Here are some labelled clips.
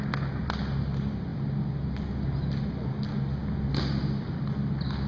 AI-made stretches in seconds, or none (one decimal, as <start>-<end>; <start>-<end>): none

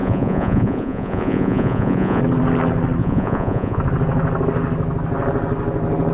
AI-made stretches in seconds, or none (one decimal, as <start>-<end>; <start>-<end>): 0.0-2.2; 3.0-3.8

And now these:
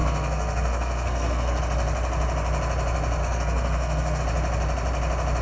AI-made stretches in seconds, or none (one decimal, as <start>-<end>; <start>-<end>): 0.0-1.6; 3.2-4.2

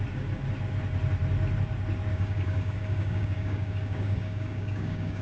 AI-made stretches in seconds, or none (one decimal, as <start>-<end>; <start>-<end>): 2.1-5.2

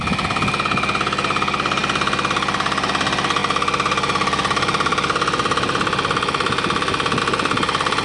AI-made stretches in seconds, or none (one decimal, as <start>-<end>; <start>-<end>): none